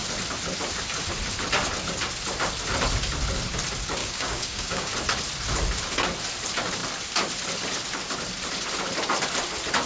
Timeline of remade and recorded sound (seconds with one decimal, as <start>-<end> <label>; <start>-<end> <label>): 0.0-4.0 recorded; 4.0-4.9 remade; 4.9-9.9 recorded